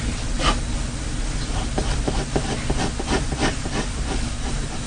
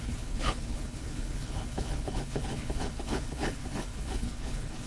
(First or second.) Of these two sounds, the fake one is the second